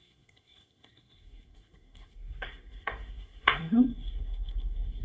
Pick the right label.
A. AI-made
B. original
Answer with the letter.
A